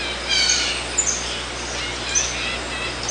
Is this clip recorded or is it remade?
recorded